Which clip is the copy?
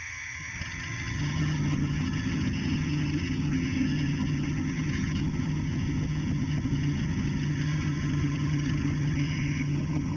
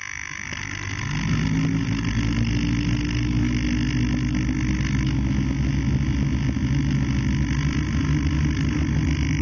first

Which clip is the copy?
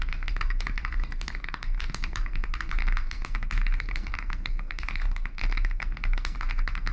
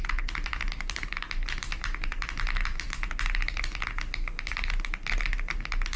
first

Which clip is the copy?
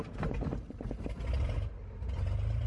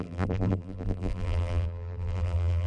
second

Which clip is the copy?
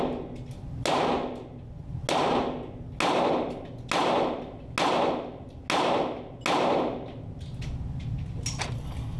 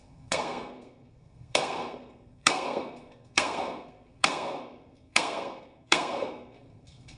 second